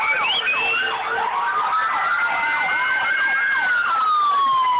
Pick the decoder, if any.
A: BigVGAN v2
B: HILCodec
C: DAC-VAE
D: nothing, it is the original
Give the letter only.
D